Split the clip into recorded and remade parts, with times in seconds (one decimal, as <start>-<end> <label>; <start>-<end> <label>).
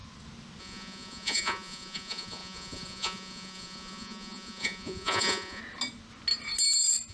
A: 0.0-0.6 recorded; 0.6-5.6 remade; 5.6-7.1 recorded